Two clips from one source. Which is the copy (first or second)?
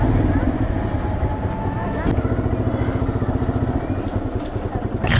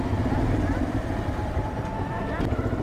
second